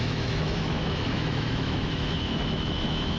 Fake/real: fake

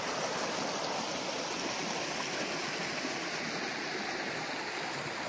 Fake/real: real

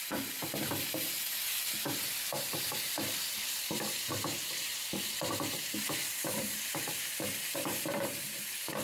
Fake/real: fake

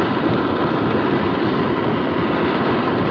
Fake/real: real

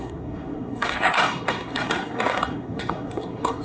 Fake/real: fake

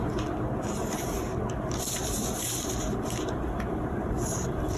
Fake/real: real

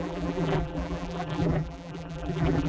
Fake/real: fake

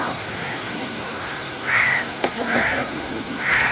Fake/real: fake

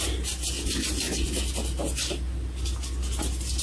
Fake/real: real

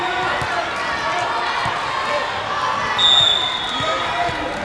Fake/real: real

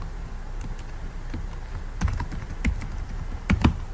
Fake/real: real